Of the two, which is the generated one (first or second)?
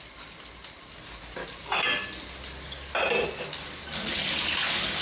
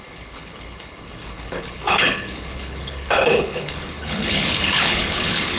second